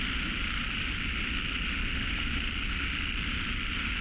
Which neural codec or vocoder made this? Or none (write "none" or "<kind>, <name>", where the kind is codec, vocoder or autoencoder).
none